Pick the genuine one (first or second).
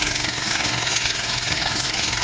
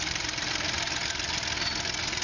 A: second